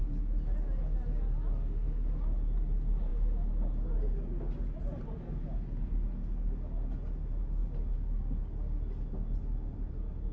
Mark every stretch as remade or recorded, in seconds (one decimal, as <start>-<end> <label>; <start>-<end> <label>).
0.0-10.3 recorded